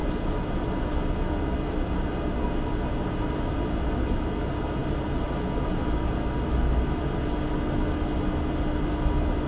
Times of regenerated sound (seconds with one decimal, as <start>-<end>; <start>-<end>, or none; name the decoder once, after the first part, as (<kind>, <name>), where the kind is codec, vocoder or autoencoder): none